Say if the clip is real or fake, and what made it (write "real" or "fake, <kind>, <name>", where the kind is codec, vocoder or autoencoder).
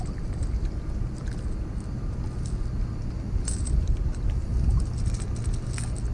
real